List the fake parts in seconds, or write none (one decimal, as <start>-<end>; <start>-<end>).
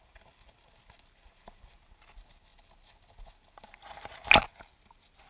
none